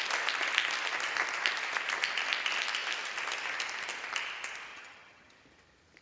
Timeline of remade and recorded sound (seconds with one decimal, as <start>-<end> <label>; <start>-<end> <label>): 0.0-4.7 recorded; 4.7-5.3 remade; 5.3-6.0 recorded